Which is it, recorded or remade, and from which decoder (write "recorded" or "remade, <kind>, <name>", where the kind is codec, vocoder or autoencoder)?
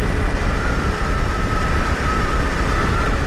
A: recorded